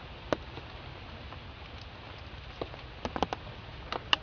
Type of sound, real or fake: real